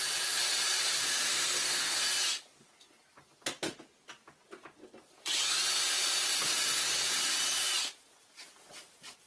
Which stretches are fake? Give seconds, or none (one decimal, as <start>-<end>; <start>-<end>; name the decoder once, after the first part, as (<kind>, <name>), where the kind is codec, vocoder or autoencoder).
1.3-2.0 (codec, SNAC)